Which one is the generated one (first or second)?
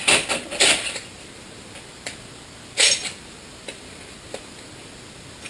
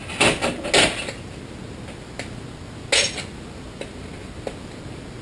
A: first